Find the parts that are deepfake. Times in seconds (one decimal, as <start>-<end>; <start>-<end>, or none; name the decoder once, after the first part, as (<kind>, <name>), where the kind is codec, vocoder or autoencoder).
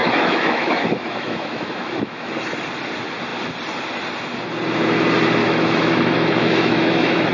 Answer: 0.0-2.3 (autoencoder, DAC-VAE); 5.4-7.3